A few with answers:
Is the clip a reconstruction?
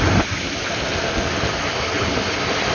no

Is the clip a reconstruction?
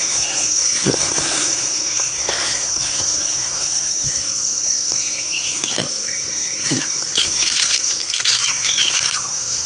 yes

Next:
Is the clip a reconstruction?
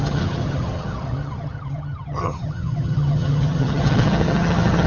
yes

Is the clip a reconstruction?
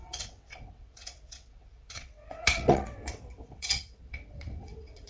yes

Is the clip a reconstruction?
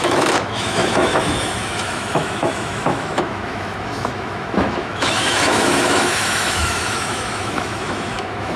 yes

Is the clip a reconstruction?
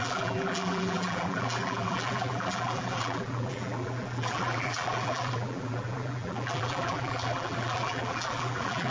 yes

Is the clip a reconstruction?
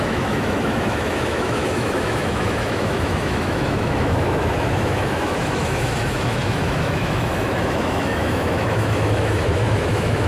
yes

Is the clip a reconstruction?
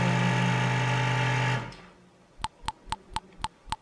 no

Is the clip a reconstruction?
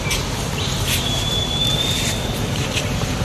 yes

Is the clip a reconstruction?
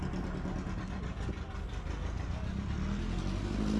no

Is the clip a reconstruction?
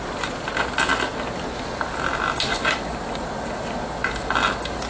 no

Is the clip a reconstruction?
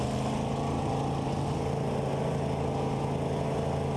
no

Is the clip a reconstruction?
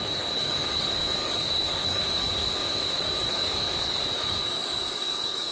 yes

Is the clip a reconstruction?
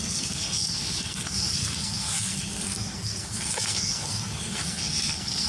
yes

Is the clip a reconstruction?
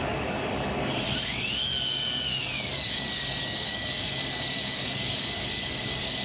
yes